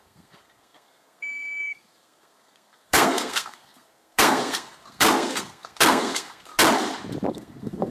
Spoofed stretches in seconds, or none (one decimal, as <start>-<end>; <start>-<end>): 0.0-6.5; 7.3-7.9